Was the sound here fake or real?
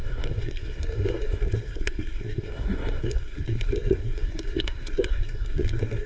fake